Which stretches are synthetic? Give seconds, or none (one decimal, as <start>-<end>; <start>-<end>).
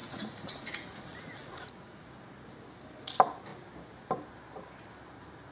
0.0-2.1